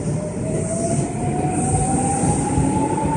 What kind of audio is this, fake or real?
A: real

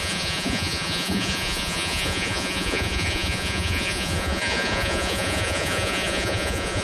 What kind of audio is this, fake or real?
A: fake